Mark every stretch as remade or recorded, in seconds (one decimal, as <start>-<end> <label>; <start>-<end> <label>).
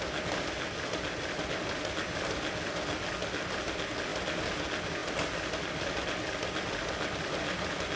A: 0.0-8.0 recorded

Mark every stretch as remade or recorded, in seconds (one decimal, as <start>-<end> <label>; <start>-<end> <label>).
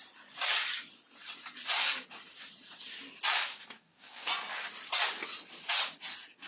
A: 0.0-3.5 recorded; 3.5-4.3 remade; 4.3-6.5 recorded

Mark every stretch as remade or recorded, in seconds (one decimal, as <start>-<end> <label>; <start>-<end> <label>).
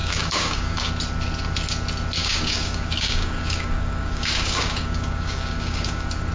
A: 0.0-0.9 remade; 0.9-2.2 recorded; 2.2-6.3 remade